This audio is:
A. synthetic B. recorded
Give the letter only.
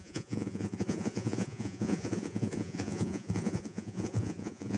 A